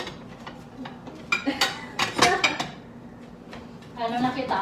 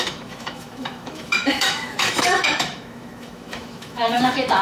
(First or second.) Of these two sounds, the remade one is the second